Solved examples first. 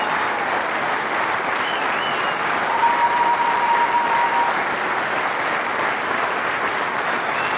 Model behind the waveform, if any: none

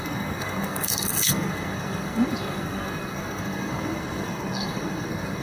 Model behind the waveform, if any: codec, SNAC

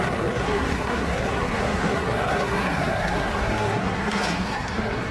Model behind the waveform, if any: codec, SNAC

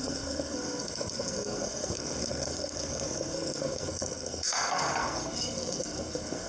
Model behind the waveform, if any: codec, SNAC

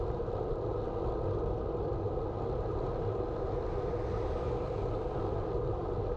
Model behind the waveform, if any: none